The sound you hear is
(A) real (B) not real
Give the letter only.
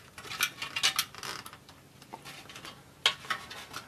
A